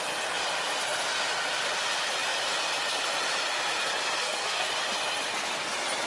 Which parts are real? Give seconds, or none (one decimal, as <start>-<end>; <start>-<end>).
0.0-4.2; 4.7-6.1